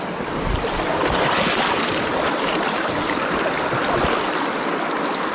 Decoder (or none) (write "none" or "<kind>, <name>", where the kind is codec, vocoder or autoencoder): none